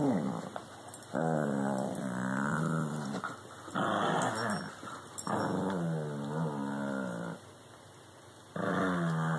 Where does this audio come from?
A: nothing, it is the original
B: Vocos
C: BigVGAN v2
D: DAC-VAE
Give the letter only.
A